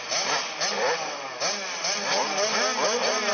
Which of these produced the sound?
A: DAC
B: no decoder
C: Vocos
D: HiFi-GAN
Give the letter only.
B